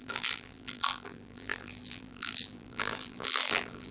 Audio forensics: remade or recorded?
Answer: remade